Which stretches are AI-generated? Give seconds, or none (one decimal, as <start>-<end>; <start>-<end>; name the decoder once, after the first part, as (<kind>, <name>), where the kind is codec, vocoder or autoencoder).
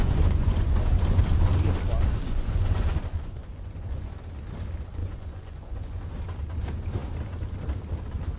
0.0-1.2 (vocoder, Vocos); 2.1-4.1; 5.0-6.0